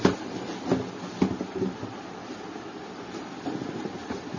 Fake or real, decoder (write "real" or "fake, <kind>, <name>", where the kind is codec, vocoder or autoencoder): real